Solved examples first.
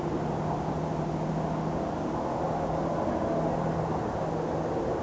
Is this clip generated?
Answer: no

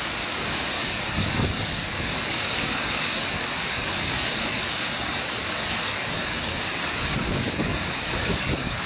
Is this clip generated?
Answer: yes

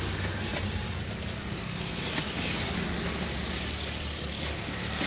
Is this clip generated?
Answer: no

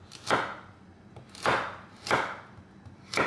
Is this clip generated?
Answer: no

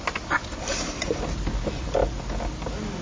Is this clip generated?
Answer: no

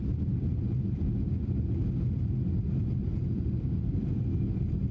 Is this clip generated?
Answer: no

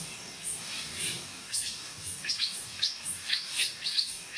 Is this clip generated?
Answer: yes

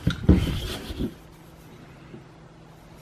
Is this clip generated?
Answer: no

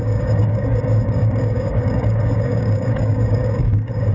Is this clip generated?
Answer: yes